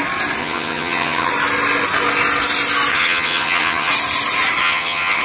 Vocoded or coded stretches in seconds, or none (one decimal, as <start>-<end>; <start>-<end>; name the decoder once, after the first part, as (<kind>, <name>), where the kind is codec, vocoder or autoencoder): 0.4-1.3 (vocoder, HiFi-GAN); 2.9-3.9; 4.6-5.2